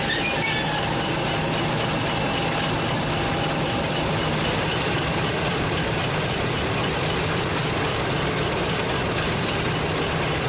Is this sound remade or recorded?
recorded